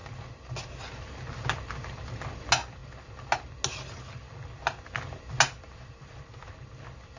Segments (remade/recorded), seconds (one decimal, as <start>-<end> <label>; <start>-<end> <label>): 0.0-7.2 recorded